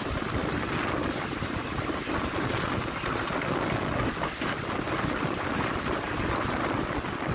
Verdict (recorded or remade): recorded